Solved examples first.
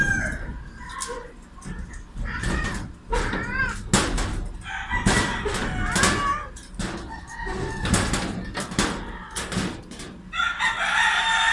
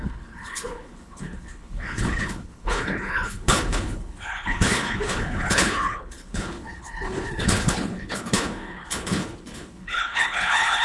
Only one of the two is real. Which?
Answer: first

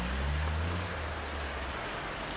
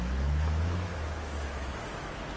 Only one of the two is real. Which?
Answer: first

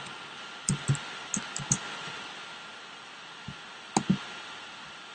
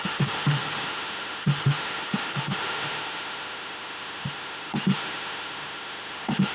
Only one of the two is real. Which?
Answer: first